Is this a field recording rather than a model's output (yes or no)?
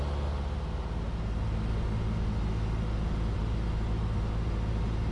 yes